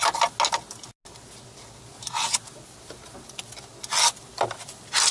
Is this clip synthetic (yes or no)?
no